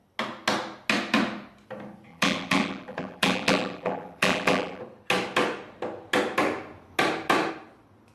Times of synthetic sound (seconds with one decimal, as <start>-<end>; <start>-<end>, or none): 2.1-4.8